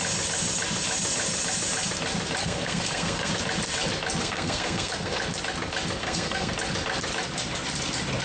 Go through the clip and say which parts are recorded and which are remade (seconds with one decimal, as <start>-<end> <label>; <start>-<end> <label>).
0.0-2.4 recorded; 2.4-3.3 remade; 3.3-4.2 recorded; 4.2-5.2 remade; 5.2-6.0 recorded; 6.0-6.5 remade; 6.5-8.2 recorded